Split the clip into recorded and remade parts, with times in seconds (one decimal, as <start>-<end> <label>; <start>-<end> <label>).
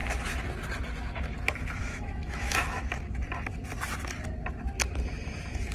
0.0-1.8 recorded; 1.8-2.9 remade; 2.9-5.7 recorded